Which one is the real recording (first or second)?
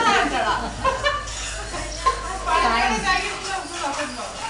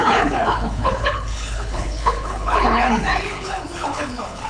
first